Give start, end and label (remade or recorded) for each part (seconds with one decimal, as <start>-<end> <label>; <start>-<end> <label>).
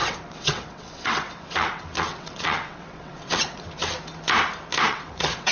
0.0-3.8 remade; 3.8-4.9 recorded; 4.9-5.5 remade